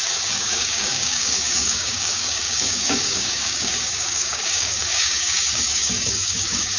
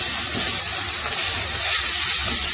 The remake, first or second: first